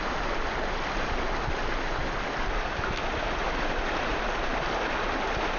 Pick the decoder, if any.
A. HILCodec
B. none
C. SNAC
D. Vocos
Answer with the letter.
B